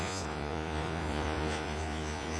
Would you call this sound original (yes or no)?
no